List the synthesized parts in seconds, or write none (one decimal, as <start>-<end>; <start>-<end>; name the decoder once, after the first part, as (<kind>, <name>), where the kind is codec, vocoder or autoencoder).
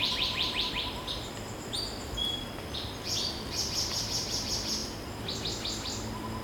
none